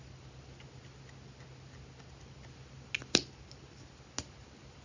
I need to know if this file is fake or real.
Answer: real